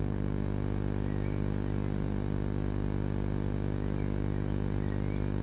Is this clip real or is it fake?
real